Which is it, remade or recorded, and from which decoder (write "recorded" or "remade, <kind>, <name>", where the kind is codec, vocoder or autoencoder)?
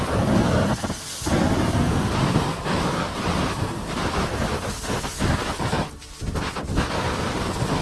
recorded